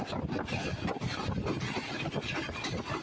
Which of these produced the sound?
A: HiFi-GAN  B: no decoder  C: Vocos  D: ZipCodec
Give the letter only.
B